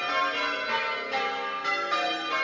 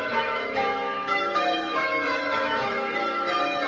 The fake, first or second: second